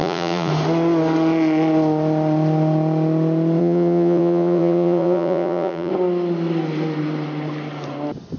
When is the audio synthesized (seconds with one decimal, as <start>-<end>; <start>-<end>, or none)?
0.0-0.5; 3.6-5.9